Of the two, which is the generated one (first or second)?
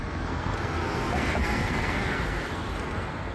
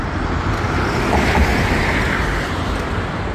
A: first